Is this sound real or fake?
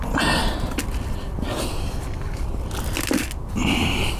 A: real